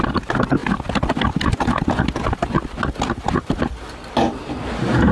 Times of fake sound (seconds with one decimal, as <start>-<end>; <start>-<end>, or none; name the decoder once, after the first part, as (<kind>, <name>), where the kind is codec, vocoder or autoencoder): none